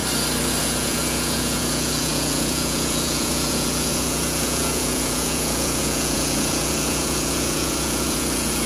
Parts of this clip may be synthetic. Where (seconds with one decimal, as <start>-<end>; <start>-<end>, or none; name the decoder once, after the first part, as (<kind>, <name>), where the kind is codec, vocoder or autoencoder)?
0.6-8.7 (vocoder, Vocos)